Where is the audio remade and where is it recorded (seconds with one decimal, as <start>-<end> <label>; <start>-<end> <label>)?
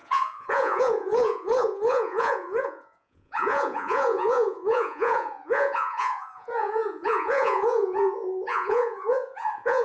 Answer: 0.0-9.8 remade